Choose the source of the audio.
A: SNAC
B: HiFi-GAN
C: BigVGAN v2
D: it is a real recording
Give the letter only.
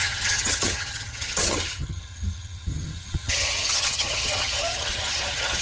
B